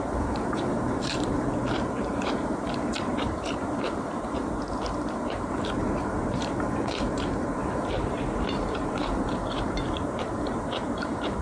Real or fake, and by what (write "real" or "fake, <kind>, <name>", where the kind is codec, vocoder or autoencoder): fake, vocoder, BigVGAN v2